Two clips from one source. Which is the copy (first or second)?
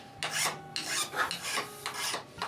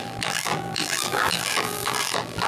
second